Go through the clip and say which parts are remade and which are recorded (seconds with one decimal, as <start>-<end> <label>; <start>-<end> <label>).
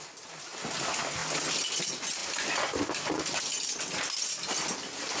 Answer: 0.0-5.2 recorded